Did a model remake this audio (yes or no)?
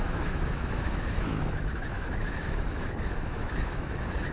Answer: yes